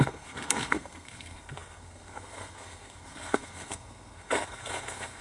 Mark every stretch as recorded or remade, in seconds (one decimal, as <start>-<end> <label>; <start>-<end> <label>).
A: 0.0-5.2 remade